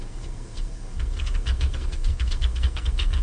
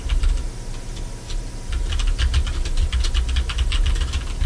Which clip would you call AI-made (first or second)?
first